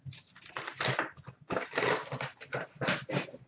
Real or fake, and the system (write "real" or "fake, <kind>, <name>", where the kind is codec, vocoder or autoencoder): real